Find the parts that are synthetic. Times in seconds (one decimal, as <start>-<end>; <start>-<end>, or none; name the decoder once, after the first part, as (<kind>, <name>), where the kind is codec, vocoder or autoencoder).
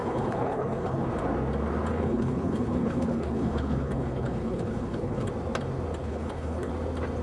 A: 0.0-1.1 (codec, HILCodec); 1.9-5.3; 6.0-6.7